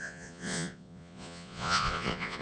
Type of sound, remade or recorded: remade